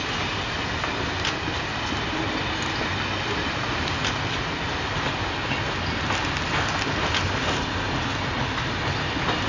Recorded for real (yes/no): yes